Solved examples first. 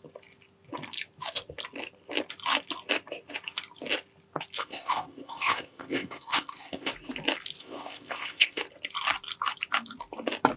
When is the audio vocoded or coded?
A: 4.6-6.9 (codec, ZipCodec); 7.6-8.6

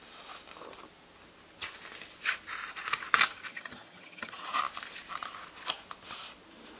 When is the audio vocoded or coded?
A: 3.5-4.6 (vocoder, HiFi-GAN)

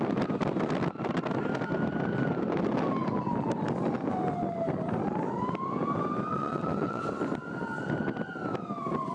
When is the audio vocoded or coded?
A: 6.3-7.0 (vocoder, WaveNeXt)